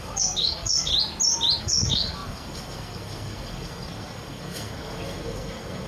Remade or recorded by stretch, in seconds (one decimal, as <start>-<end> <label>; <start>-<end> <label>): 0.0-0.9 remade; 0.9-1.6 recorded; 1.6-5.9 remade